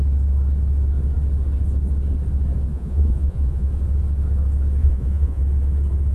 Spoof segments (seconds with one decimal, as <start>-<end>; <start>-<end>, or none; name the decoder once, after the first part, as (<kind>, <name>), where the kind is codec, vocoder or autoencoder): 2.7-3.7 (vocoder, Vocos); 4.8-5.4